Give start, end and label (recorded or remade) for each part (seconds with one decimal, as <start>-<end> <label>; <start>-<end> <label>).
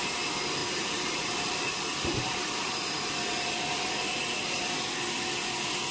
0.0-0.6 recorded; 0.6-2.7 remade; 2.7-5.9 recorded